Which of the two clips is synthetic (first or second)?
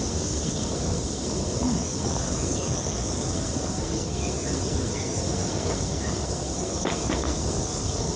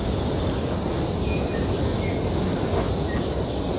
first